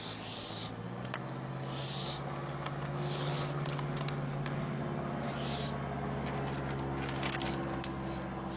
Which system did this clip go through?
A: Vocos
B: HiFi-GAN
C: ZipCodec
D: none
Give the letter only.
D